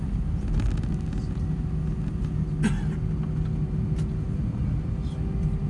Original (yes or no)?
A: yes